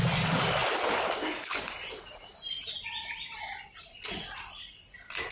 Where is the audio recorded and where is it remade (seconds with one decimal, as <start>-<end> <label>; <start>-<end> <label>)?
0.0-5.3 recorded